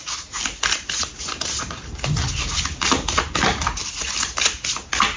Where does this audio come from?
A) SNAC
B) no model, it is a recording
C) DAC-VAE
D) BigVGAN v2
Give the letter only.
B